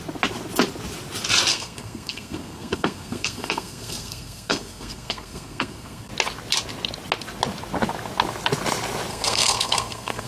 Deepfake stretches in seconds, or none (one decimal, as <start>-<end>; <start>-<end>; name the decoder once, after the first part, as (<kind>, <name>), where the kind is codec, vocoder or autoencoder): 1.5-6.1 (codec, SNAC); 9.1-10.3